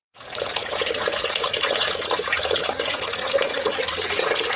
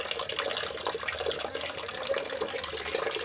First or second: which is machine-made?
first